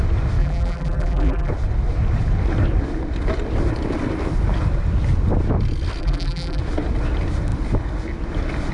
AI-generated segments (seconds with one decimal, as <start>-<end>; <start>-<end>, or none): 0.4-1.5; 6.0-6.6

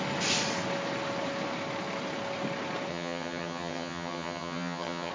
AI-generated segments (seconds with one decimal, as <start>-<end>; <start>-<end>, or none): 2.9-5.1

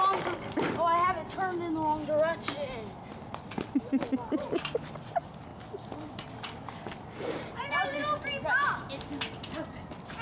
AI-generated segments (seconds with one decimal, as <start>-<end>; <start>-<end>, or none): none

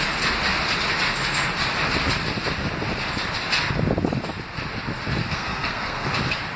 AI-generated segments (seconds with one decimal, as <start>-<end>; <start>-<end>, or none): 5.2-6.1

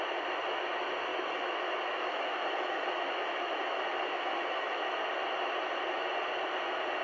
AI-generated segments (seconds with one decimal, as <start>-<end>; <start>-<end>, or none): 1.1-5.0

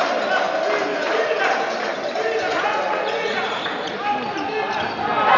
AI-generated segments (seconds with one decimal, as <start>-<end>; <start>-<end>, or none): 0.9-1.4; 2.5-4.0

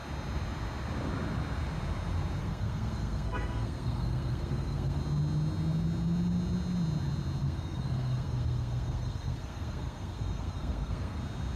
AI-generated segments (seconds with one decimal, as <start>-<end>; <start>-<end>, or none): 2.4-5.0; 7.4-11.2

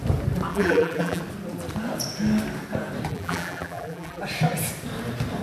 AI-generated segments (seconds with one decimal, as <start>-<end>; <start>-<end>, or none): 0.5-1.2; 3.1-4.2